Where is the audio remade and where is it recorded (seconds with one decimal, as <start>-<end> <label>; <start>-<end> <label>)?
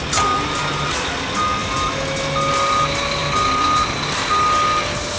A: 0.0-5.2 recorded